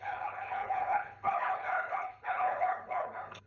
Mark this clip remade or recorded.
remade